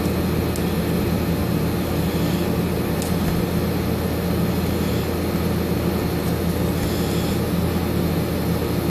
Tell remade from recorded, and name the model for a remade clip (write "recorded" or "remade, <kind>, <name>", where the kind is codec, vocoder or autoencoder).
recorded